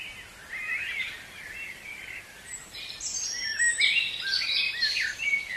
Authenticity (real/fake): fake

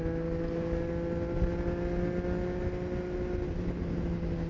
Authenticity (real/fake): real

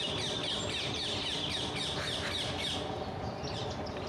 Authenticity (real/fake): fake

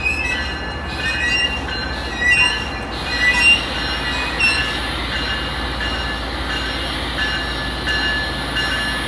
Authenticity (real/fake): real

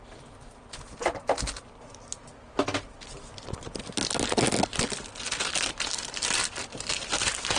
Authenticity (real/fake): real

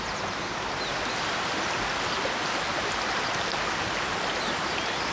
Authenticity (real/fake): real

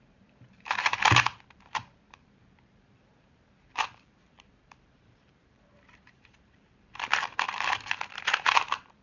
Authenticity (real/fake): fake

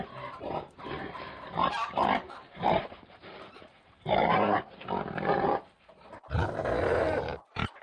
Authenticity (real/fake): fake